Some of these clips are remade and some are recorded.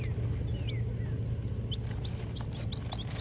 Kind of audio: recorded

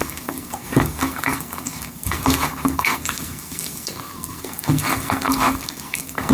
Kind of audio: remade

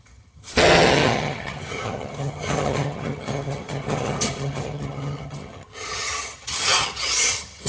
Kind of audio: remade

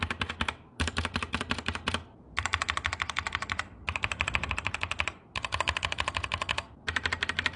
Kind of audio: remade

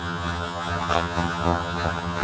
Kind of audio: remade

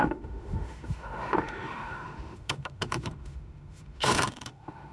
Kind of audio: remade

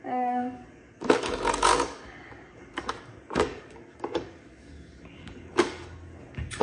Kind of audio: remade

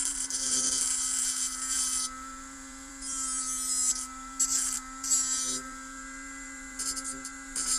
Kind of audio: remade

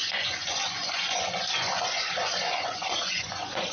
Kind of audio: remade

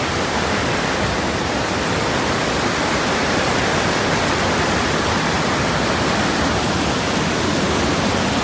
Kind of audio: recorded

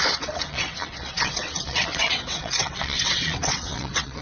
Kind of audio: remade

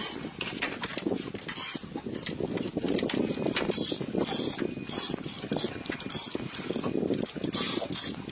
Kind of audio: recorded